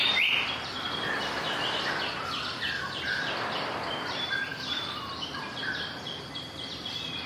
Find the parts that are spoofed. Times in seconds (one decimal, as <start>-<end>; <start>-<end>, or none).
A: 0.0-7.3